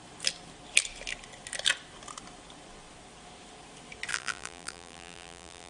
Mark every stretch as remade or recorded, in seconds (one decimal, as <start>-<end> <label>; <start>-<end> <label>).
0.0-4.1 recorded; 4.1-5.7 remade